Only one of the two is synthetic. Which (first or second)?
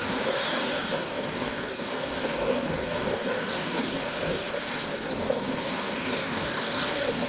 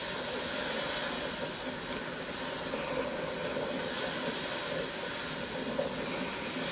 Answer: first